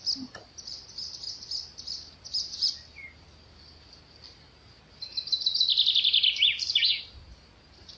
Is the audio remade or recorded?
recorded